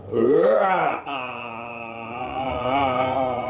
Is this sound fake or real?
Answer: fake